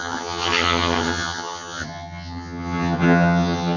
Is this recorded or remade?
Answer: remade